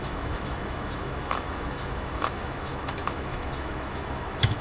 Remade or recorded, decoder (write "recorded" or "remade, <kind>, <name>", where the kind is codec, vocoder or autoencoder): remade, autoencoder, DAC-VAE